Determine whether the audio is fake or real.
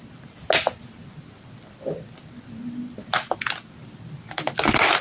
real